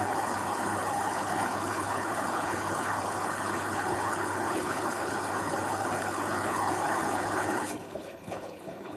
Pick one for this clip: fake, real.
fake